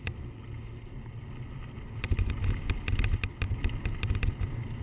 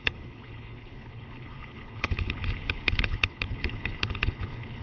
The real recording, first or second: first